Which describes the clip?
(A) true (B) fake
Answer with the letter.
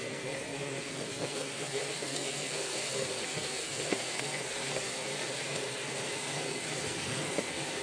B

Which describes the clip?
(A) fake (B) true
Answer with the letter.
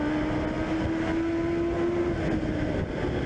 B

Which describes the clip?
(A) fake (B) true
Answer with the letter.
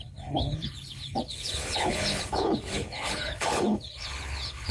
A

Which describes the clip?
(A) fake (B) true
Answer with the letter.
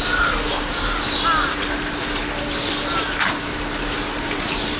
B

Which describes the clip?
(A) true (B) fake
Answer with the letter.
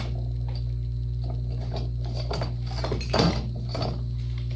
A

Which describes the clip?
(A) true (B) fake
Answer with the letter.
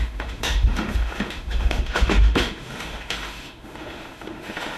B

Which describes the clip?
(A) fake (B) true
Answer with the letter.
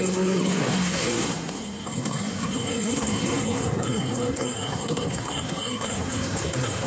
A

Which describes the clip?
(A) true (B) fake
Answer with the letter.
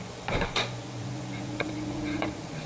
B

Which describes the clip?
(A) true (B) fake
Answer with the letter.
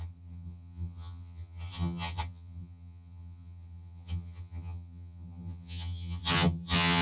B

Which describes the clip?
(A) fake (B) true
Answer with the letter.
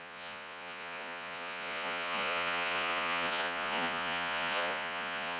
A